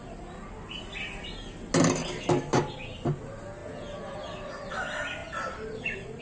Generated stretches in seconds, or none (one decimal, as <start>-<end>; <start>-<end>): none